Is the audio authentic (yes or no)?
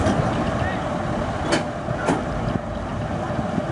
yes